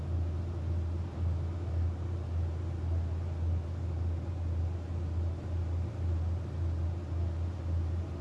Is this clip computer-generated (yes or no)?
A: no